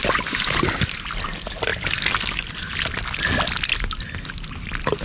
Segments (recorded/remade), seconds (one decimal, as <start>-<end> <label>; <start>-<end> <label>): 0.0-5.0 recorded